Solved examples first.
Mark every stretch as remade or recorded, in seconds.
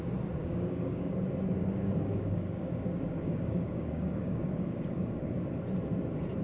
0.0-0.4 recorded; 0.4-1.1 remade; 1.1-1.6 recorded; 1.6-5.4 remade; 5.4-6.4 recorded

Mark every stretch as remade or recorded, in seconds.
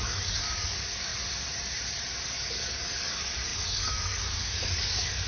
0.0-1.1 remade; 1.1-2.2 recorded; 2.2-5.3 remade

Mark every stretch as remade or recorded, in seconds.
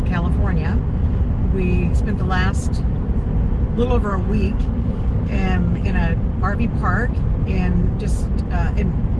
0.0-4.1 recorded; 4.1-6.0 remade; 6.0-9.2 recorded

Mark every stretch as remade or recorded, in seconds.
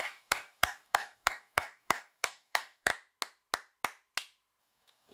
0.0-2.9 remade; 2.9-4.6 recorded; 4.6-5.1 remade